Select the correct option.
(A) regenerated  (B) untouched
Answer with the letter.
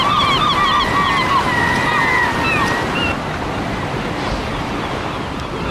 B